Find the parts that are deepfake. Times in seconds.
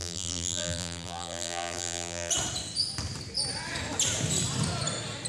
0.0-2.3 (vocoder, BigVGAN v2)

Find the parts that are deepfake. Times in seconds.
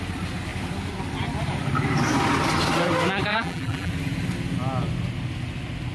3.3-3.9 (vocoder, BigVGAN v2)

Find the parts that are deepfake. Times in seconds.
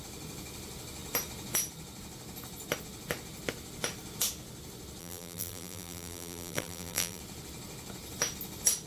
5.0-7.2 (vocoder, BigVGAN v2)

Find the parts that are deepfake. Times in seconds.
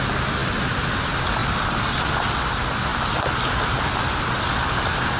none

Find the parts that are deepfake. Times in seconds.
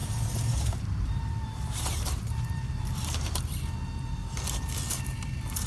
0.0-3.4 (vocoder, BigVGAN v2); 4.2-4.7